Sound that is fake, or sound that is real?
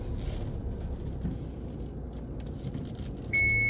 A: real